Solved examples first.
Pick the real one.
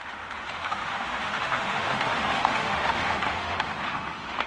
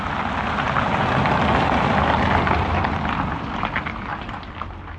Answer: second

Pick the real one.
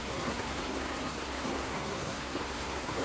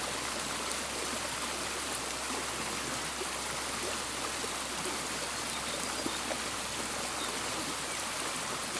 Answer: second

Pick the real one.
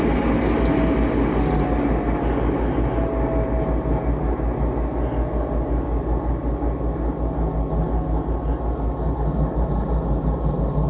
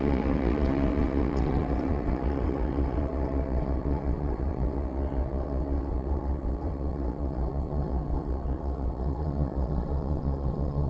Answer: first